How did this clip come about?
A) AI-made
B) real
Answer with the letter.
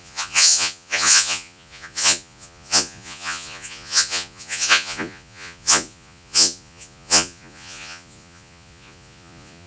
A